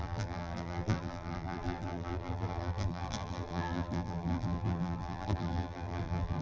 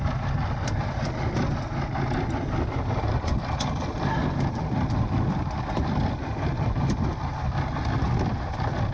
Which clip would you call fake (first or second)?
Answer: first